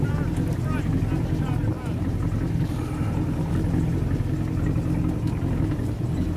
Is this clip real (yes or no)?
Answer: yes